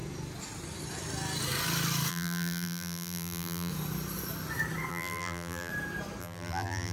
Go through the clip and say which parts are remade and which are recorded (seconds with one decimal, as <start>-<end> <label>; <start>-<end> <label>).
0.0-2.1 recorded; 2.1-3.7 remade; 3.7-4.9 recorded; 4.9-5.7 remade; 5.7-6.2 recorded; 6.2-6.9 remade

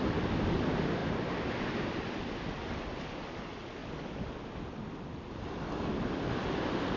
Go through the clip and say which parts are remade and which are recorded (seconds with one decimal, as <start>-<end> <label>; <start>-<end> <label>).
0.0-7.0 recorded

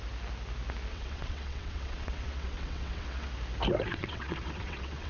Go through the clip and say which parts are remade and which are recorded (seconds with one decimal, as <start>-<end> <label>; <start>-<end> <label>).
0.0-0.9 recorded; 0.9-3.3 remade; 3.3-3.9 recorded; 3.9-5.1 remade

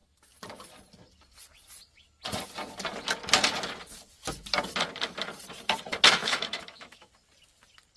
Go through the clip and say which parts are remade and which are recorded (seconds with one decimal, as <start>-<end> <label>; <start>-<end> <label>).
0.0-6.2 recorded; 6.2-7.1 remade; 7.1-8.0 recorded

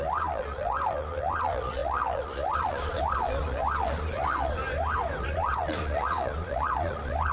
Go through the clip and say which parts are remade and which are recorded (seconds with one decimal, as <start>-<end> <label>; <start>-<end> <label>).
0.0-4.6 remade; 4.6-5.2 recorded; 5.2-7.3 remade